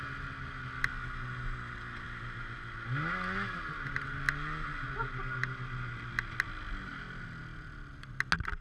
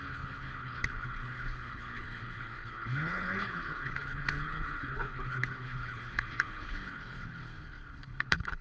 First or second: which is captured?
first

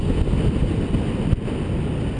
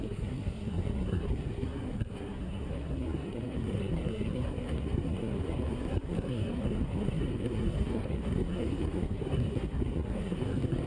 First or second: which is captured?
first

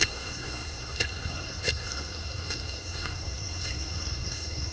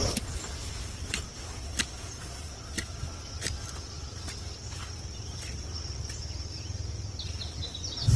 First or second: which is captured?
second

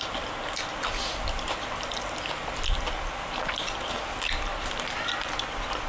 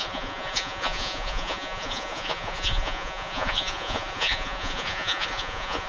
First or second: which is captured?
first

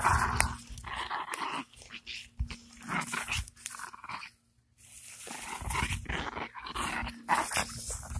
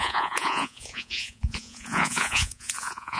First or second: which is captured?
first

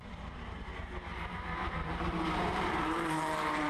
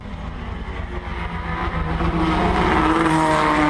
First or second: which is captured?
second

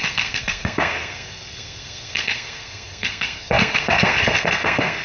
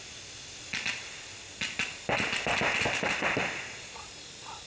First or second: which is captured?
second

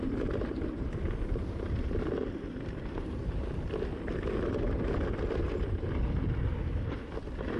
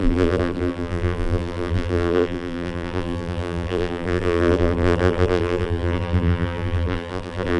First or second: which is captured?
first